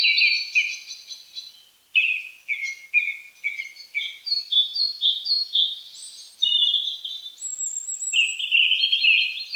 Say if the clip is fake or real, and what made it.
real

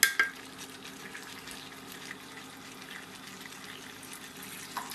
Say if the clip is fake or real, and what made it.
real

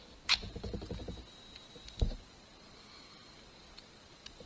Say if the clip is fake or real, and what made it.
real